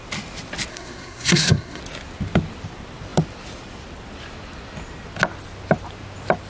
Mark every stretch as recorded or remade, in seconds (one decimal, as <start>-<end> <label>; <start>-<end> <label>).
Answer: 0.0-0.7 recorded; 0.7-1.8 remade; 1.8-6.5 recorded